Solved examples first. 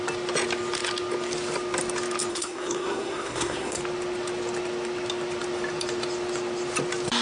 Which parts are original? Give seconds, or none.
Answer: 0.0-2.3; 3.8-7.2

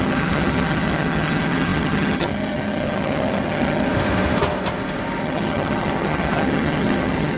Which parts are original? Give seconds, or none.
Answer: 3.9-5.2

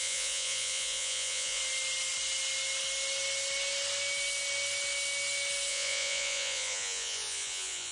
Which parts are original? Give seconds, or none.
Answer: 1.6-5.7